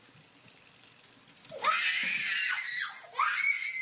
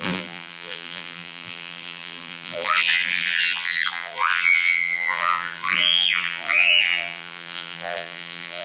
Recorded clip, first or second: first